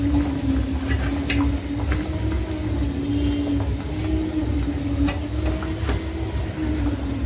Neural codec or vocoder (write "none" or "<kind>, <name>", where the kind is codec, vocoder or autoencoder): none